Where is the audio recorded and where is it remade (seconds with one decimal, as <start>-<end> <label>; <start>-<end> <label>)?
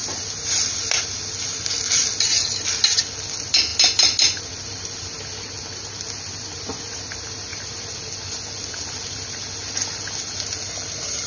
0.0-11.3 recorded